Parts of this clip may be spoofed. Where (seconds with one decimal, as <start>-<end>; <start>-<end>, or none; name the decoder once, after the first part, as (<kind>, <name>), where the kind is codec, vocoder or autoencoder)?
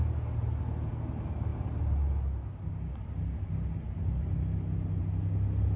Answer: none